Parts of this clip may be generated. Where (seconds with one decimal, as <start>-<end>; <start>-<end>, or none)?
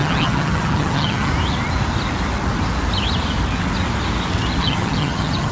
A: 0.0-1.3; 4.6-5.5